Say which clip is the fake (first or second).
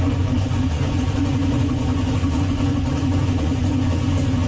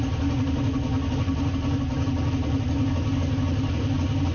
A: first